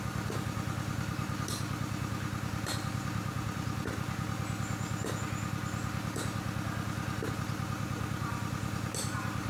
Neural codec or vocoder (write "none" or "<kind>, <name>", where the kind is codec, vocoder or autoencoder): none